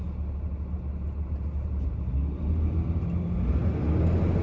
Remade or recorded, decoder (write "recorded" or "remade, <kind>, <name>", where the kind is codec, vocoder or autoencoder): recorded